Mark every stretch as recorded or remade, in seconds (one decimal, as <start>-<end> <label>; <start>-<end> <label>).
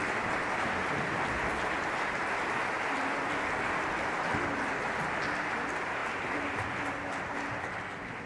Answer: 0.0-8.3 recorded